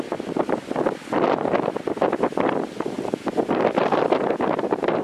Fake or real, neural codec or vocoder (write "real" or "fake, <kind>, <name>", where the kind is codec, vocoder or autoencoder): real